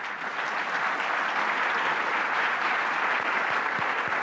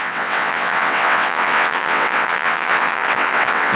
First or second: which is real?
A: first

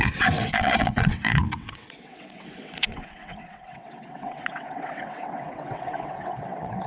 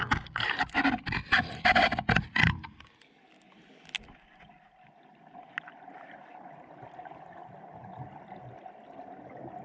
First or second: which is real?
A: second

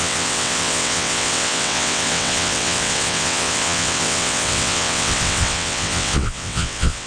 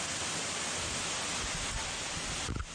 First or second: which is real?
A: second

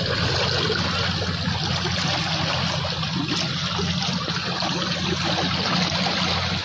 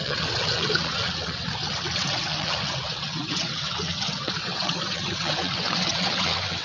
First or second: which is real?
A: first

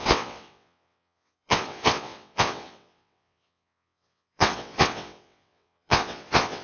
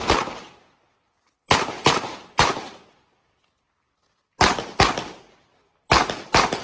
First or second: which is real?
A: second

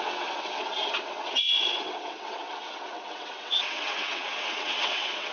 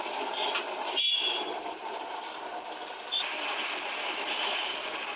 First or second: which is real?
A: second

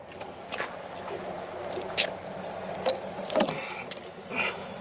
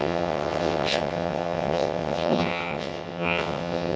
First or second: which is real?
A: first